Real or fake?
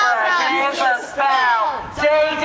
fake